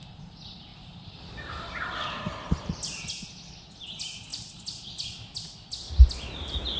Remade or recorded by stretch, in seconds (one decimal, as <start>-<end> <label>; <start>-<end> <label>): 0.0-0.7 recorded; 0.7-2.7 remade; 2.7-4.3 recorded; 4.3-4.8 remade; 4.8-6.8 recorded